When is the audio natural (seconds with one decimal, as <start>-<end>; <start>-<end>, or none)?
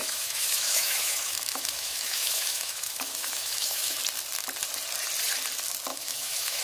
4.0-5.9